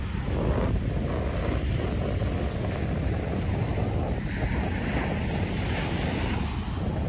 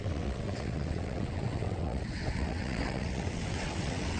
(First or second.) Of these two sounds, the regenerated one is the second